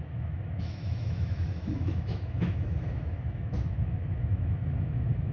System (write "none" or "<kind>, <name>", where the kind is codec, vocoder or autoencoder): autoencoder, DAC-VAE